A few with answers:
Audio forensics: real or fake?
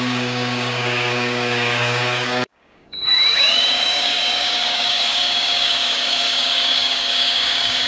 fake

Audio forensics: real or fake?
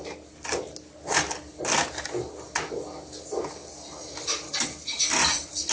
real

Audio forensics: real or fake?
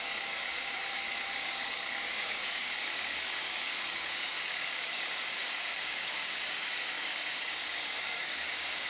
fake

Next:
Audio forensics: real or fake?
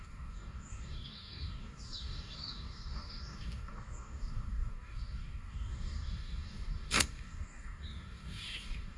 fake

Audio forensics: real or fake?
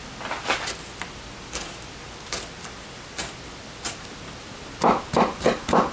real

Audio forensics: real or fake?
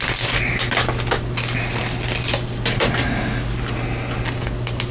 real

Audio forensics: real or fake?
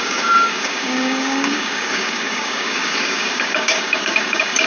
fake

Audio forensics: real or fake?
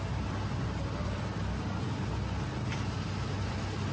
real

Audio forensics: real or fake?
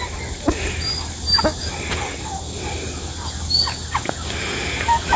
real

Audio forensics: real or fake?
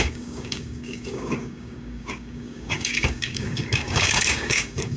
fake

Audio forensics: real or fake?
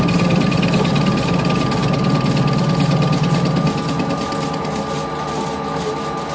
real